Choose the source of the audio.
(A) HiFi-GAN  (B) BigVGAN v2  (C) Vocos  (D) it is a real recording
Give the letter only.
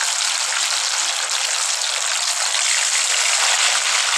D